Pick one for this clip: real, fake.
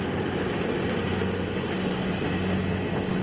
real